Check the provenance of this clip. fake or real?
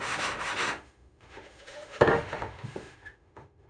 fake